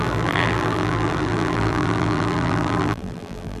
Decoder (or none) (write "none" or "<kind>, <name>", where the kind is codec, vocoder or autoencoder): vocoder, BigVGAN v2